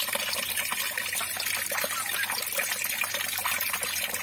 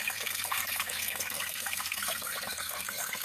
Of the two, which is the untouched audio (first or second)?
first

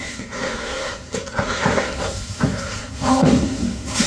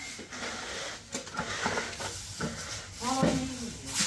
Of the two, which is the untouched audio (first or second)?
second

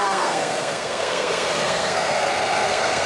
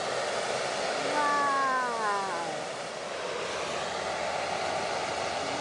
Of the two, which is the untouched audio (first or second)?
second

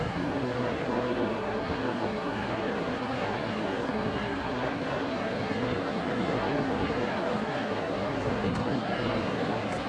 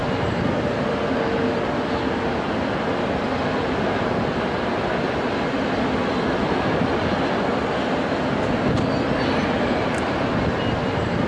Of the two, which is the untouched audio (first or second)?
second